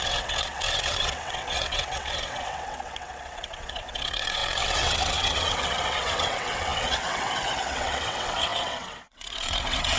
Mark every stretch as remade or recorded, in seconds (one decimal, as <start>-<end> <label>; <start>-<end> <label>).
0.0-10.0 remade